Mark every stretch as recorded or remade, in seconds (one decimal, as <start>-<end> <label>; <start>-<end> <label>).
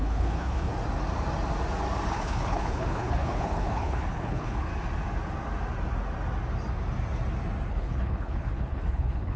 0.0-0.7 remade; 0.7-2.1 recorded; 2.1-4.7 remade; 4.7-7.7 recorded; 7.7-9.4 remade